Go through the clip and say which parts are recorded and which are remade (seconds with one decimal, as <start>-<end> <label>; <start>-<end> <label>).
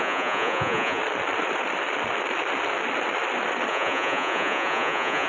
0.0-1.0 remade; 1.0-3.7 recorded; 3.7-5.3 remade